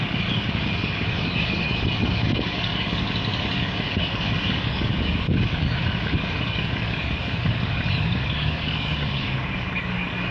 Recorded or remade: remade